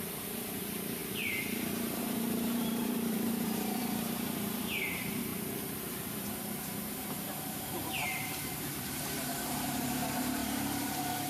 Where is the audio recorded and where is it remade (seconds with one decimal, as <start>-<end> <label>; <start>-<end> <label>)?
0.0-10.4 remade; 10.4-11.3 recorded